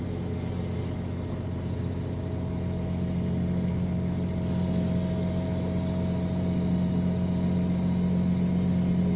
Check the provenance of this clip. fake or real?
real